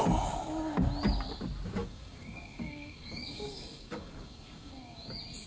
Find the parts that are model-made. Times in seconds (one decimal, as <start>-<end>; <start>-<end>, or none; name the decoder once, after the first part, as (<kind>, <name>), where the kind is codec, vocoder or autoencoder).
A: 1.8-5.1 (codec, DAC)